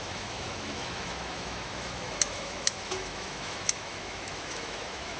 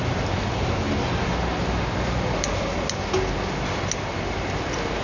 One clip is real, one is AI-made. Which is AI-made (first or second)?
first